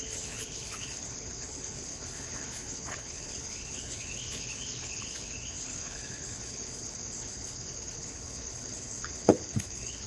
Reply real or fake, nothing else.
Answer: fake